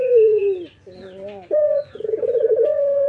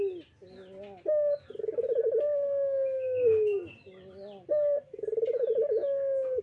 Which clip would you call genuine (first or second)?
second